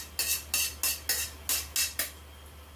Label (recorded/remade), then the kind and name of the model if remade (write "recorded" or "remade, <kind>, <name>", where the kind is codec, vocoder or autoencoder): recorded